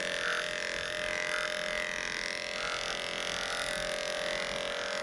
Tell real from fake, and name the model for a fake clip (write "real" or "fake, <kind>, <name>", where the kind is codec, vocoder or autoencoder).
real